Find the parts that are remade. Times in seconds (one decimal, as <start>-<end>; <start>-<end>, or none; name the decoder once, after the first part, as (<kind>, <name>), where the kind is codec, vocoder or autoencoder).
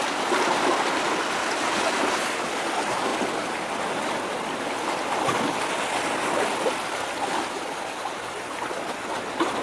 none